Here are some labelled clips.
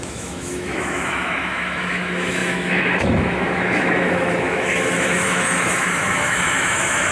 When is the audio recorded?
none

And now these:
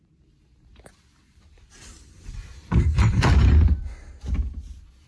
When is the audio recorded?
0.0-0.7; 3.8-5.1

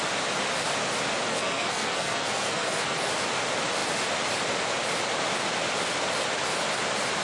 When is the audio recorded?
0.0-1.3; 3.1-7.2